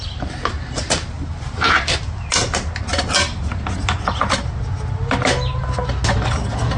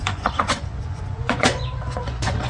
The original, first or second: first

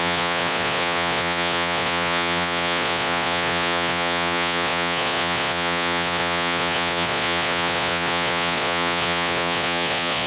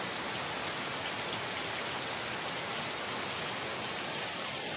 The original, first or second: second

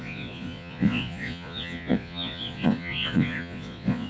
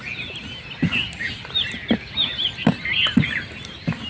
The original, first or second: second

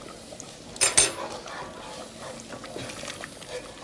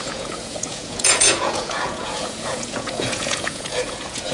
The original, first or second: first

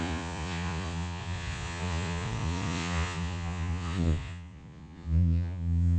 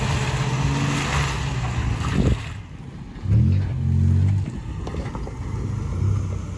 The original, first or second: second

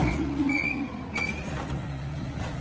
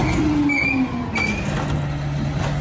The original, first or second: second